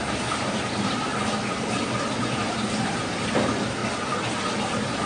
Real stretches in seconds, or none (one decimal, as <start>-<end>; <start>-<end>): 1.1-2.2; 3.8-4.6